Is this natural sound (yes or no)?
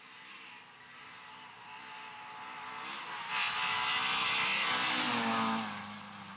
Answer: yes